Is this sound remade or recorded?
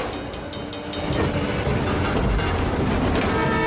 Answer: recorded